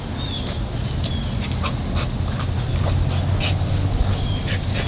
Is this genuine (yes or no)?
yes